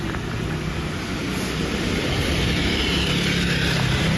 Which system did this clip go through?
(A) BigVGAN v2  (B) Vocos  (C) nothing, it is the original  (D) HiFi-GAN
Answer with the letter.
C